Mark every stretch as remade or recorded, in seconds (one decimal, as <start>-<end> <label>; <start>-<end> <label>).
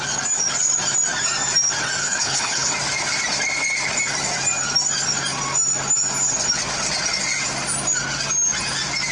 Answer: 0.0-2.0 recorded; 2.0-2.7 remade; 2.7-9.1 recorded